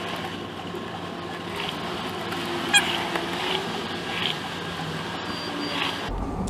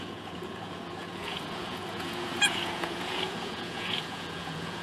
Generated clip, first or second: second